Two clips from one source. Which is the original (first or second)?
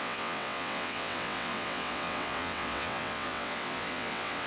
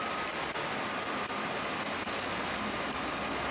second